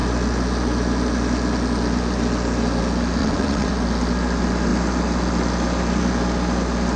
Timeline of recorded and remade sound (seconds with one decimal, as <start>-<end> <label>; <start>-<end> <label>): 0.0-3.2 recorded; 3.2-3.7 remade; 3.7-7.0 recorded